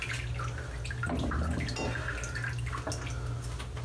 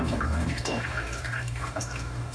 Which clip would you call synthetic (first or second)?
second